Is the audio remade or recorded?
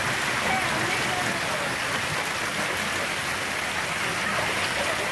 recorded